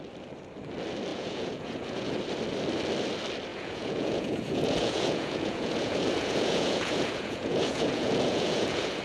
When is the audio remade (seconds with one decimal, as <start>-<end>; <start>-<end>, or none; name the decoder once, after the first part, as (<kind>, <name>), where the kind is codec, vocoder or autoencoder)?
1.1-2.2 (vocoder, Vocos); 3.5-9.0